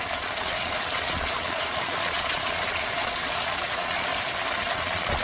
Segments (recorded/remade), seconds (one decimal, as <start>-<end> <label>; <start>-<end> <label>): 0.0-4.1 remade; 4.1-4.7 recorded; 4.7-5.2 remade